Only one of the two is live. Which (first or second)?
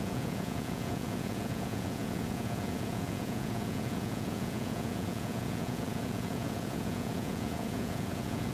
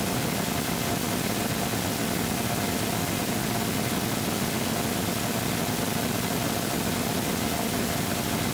second